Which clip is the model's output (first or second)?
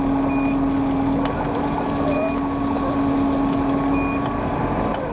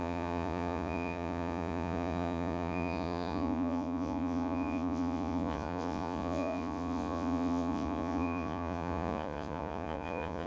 second